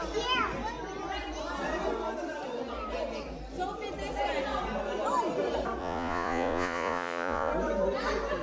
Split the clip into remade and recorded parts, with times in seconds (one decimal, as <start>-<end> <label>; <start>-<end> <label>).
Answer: 0.0-5.8 recorded; 5.8-7.5 remade; 7.5-8.4 recorded